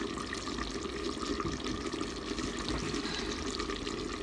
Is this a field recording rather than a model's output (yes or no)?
yes